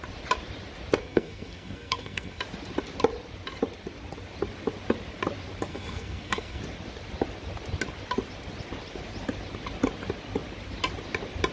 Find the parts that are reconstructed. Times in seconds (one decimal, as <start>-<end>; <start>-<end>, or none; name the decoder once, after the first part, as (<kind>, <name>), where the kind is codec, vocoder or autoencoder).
1.0-2.4 (codec, SNAC); 5.7-6.6